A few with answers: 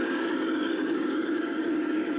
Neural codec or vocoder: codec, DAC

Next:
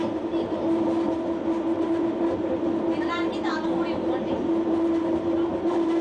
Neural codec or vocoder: none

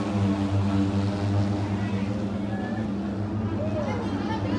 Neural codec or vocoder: none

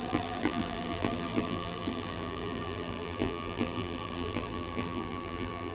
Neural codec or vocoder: vocoder, BigVGAN v2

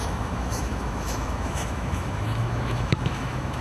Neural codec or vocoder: autoencoder, DAC-VAE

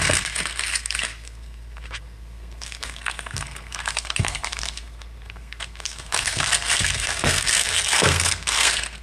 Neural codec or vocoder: codec, SNAC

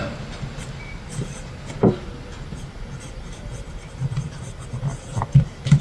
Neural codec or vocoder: none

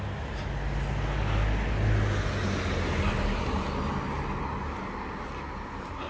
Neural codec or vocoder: none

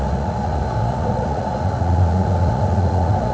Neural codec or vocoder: vocoder, Vocos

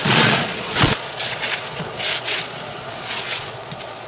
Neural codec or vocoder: vocoder, Vocos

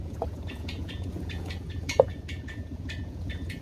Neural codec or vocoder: vocoder, Vocos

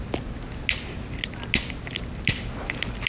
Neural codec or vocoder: none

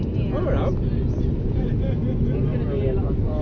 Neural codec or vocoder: none